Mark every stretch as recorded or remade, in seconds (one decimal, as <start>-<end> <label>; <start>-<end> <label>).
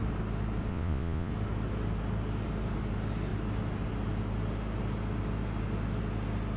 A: 0.0-0.7 recorded; 0.7-1.3 remade; 1.3-6.6 recorded